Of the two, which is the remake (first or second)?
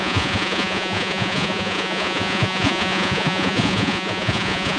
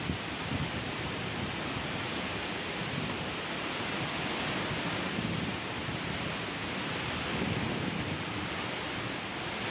first